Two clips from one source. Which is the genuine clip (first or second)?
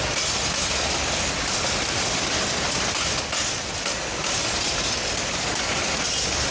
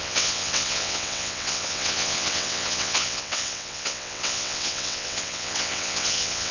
first